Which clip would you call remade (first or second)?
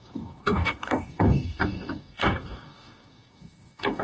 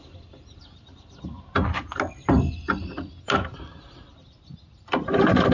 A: first